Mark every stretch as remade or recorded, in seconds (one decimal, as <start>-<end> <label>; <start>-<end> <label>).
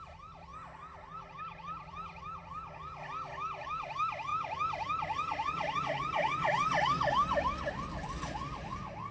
0.0-9.1 recorded